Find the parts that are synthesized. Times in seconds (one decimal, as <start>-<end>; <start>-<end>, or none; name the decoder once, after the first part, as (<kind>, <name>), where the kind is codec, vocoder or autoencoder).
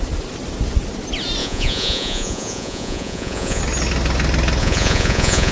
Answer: 1.4-3.6 (vocoder, Vocos); 4.6-5.5